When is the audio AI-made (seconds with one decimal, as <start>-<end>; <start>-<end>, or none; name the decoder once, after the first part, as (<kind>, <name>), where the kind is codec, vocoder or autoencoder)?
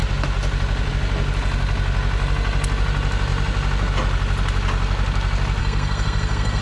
5.6-6.6 (codec, SNAC)